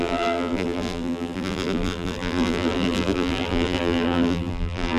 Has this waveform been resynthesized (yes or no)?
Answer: yes